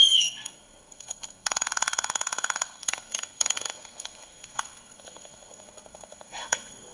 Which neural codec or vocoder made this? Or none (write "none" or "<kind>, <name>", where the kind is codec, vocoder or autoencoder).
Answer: codec, SNAC